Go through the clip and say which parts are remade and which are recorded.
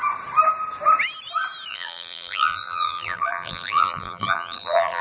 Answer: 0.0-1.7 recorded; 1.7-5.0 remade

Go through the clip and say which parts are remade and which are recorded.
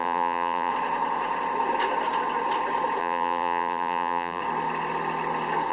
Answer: 0.0-0.7 remade; 0.7-3.0 recorded; 3.0-4.4 remade; 4.4-5.7 recorded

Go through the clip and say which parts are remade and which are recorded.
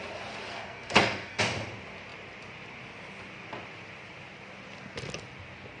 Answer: 0.0-0.5 recorded; 0.5-1.4 remade; 1.4-5.8 recorded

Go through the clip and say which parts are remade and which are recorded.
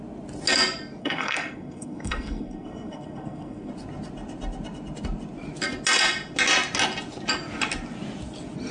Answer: 0.0-1.0 recorded; 1.0-3.7 remade; 3.7-8.7 recorded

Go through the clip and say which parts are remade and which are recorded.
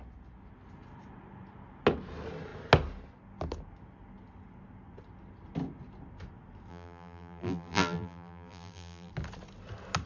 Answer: 0.0-6.7 recorded; 6.7-9.1 remade; 9.1-10.1 recorded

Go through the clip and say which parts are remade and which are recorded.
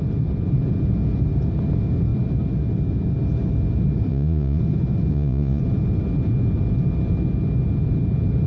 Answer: 0.0-4.1 recorded; 4.1-4.6 remade; 4.6-5.1 recorded; 5.1-5.6 remade; 5.6-8.5 recorded